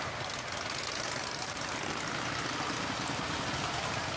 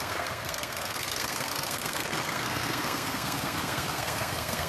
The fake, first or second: second